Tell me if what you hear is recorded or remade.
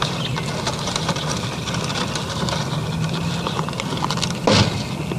recorded